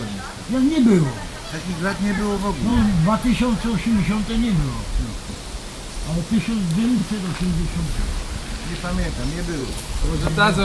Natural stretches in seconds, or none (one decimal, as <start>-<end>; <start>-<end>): 0.0-9.6; 10.1-10.6